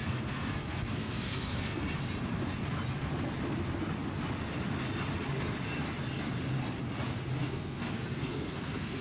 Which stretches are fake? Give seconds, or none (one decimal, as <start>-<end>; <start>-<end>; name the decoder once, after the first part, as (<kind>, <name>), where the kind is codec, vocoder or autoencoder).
0.0-1.8 (codec, SNAC); 7.4-9.0